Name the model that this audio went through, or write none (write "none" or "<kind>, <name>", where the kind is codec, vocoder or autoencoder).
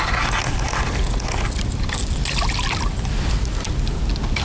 none